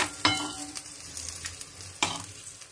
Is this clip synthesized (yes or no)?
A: no